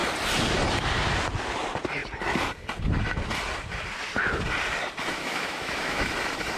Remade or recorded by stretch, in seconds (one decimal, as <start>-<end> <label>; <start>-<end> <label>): 0.0-5.1 recorded; 5.1-6.1 remade; 6.1-6.6 recorded